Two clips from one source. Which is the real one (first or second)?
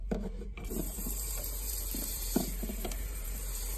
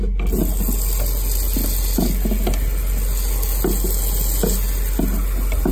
second